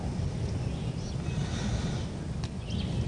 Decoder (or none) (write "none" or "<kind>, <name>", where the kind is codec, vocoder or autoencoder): none